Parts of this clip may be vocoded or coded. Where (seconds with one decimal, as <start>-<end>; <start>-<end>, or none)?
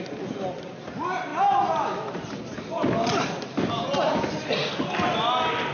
none